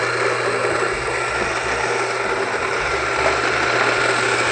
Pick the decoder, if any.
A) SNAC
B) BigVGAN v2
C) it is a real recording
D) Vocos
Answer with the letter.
C